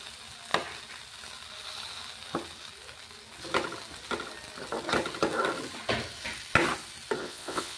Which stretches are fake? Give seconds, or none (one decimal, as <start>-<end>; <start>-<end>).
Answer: 7.2-7.8